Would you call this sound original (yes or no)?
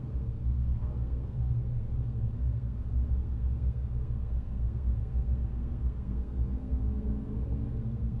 no